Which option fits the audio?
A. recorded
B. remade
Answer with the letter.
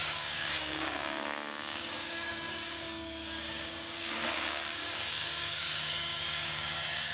B